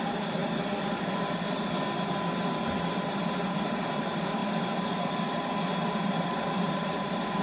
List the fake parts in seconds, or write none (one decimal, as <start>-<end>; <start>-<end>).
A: 0.0-0.4; 3.9-4.4; 6.2-7.4